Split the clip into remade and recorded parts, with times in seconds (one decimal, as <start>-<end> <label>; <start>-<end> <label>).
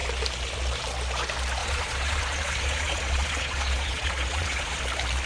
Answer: 0.0-1.6 recorded; 1.6-4.8 remade; 4.8-5.3 recorded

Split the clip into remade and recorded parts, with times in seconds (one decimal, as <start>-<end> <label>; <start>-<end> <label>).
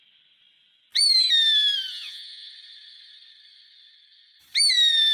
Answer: 0.0-1.9 recorded; 1.9-2.5 remade; 2.5-5.1 recorded